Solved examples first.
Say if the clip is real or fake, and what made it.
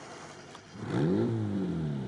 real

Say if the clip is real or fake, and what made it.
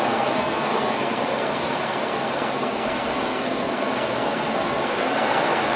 fake, codec, SNAC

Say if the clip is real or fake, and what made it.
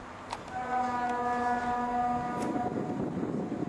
real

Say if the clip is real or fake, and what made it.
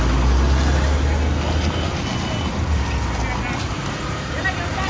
real